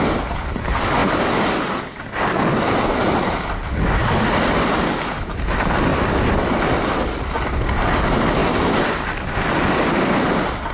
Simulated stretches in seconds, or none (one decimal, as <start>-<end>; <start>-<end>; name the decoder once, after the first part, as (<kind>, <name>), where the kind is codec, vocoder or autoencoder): none